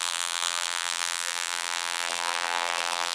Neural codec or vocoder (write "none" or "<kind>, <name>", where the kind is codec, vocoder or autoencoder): vocoder, BigVGAN v2